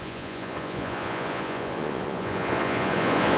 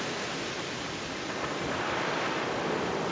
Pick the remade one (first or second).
first